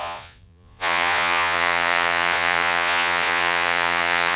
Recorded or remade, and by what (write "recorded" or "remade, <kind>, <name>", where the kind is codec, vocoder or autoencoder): remade, vocoder, Vocos